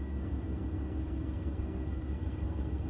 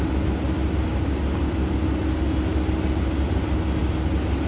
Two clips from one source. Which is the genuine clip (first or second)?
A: second